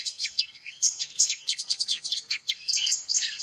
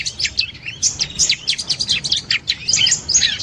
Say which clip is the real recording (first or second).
second